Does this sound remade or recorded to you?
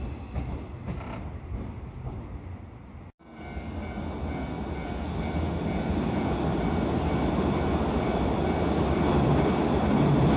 recorded